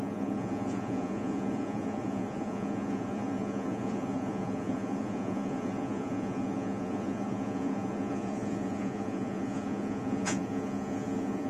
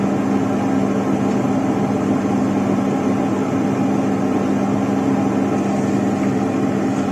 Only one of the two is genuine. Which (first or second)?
second